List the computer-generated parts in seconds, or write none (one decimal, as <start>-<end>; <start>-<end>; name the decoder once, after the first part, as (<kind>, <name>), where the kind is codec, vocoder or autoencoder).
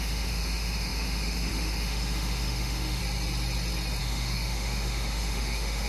0.0-3.0 (autoencoder, DAC-VAE); 4.0-5.9